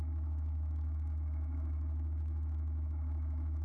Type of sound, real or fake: fake